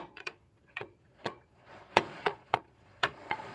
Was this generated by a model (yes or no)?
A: yes